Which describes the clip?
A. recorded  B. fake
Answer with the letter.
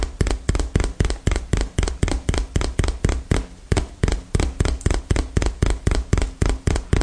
A